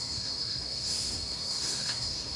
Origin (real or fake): fake